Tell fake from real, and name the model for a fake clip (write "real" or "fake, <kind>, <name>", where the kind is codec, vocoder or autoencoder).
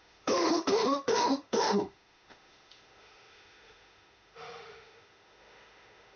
fake, autoencoder, DAC-VAE